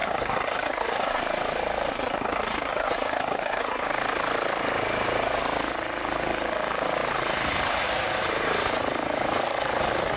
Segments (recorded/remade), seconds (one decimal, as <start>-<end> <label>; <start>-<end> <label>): 0.0-1.2 remade; 1.2-1.9 recorded; 1.9-3.9 remade; 3.9-10.2 recorded